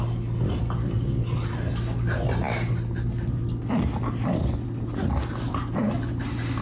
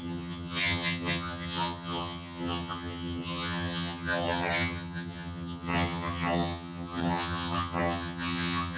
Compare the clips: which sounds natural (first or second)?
first